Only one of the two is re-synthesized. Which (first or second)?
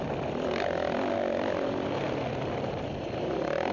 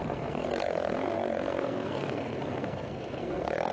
second